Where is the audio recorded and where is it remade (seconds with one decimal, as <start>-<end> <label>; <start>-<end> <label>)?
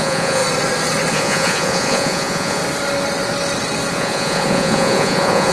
0.0-0.4 remade; 0.4-1.1 recorded; 1.1-2.6 remade; 2.6-3.9 recorded; 3.9-5.5 remade